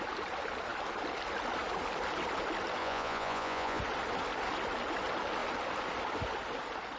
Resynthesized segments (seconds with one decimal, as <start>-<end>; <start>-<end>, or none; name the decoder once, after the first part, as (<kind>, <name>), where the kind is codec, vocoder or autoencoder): 2.8-3.8 (vocoder, Vocos)